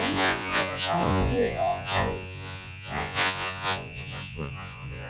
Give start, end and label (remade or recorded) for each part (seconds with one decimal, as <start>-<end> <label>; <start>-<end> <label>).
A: 0.0-5.1 remade